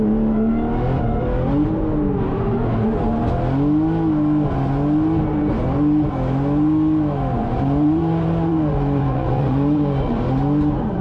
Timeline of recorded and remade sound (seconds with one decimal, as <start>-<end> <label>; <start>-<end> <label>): 0.0-7.4 recorded; 7.4-10.2 remade; 10.2-11.0 recorded

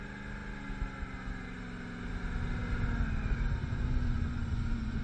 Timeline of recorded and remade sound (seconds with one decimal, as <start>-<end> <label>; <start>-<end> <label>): 0.0-3.6 recorded; 3.6-5.0 remade